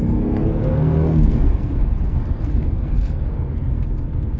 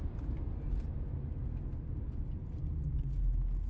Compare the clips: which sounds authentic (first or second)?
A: second